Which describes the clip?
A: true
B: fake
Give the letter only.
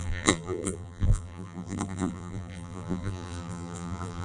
B